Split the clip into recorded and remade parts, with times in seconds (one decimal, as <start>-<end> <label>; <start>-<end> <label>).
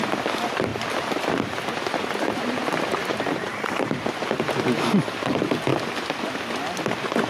0.0-7.3 remade